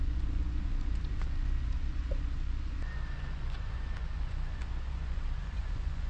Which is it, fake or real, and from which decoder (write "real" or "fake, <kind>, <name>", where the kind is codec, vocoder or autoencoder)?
fake, vocoder, Vocos